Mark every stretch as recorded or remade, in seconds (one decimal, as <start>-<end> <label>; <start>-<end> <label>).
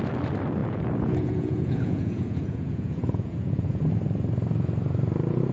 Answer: 0.0-0.6 recorded; 0.6-3.9 remade; 3.9-5.5 recorded